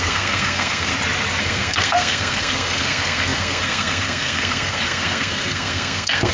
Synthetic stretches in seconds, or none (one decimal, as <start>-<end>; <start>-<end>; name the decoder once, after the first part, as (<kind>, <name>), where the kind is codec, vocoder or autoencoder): 0.0-0.9 (codec, SNAC); 1.4-6.3